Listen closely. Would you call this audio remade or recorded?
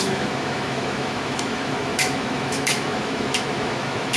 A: remade